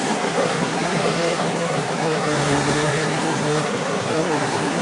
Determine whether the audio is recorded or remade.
remade